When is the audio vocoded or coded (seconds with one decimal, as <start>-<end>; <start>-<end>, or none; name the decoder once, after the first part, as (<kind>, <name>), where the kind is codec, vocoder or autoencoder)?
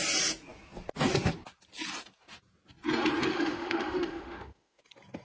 3.3-4.8 (autoencoder, DAC-VAE)